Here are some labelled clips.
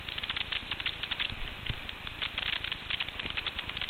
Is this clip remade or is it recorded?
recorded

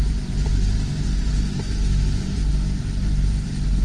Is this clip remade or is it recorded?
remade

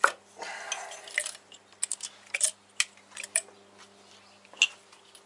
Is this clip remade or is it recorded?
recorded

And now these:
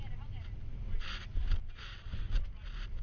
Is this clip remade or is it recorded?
recorded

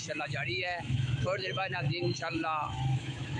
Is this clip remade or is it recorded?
remade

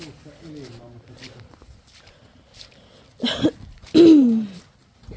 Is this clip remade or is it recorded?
recorded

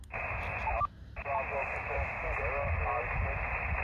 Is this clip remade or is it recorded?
recorded